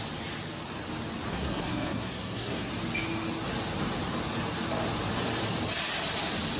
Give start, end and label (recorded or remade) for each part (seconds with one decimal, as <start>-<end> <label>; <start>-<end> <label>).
0.0-1.3 recorded; 1.3-2.7 remade; 2.7-6.6 recorded